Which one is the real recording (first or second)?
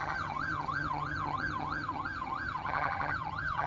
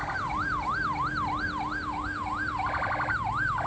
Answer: second